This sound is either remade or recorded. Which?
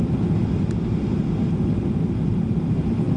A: recorded